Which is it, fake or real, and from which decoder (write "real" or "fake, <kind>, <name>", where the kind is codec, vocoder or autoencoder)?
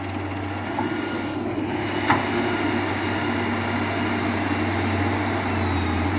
real